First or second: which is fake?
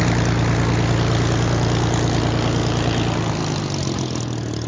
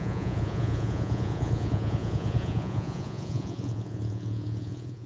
second